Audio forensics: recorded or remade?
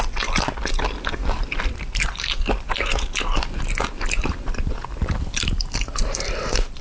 recorded